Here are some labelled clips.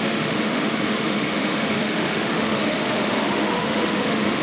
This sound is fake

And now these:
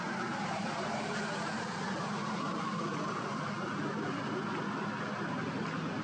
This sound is real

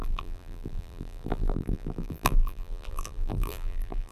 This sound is fake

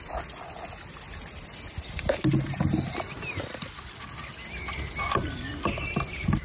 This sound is real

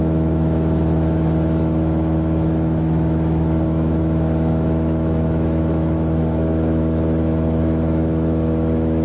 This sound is fake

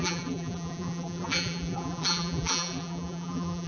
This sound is fake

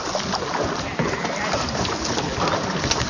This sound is real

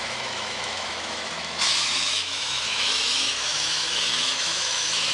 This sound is fake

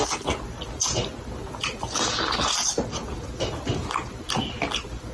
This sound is real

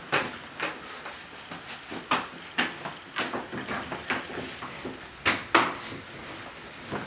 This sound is real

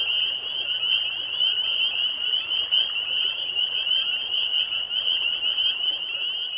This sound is real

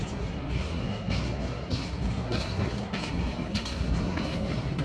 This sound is fake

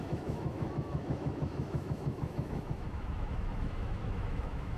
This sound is fake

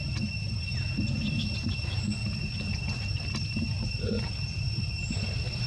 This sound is real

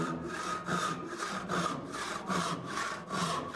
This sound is fake